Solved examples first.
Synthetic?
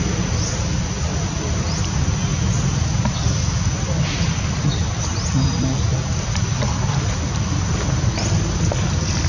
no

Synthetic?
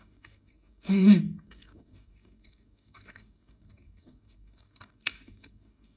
yes